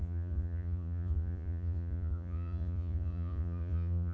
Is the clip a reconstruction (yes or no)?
yes